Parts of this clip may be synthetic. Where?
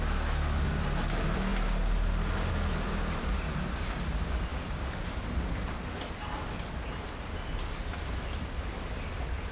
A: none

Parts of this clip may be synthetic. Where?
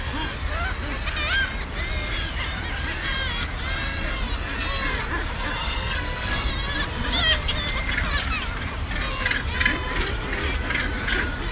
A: 5.6-6.5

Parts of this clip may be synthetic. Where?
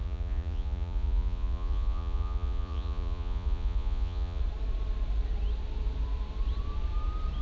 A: 0.0-4.4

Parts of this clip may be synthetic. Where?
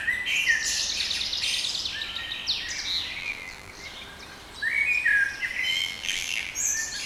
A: 3.2-3.7; 5.7-6.5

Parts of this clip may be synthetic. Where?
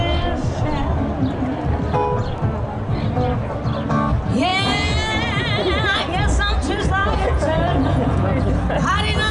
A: 7.0-8.4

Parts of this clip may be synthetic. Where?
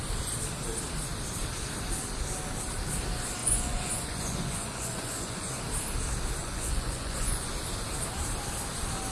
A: 3.4-5.6; 6.4-7.5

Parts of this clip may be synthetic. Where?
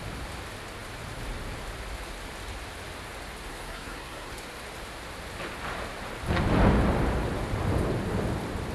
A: 3.5-4.3